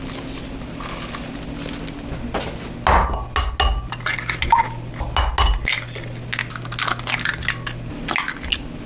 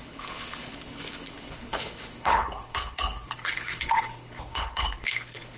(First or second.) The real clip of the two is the first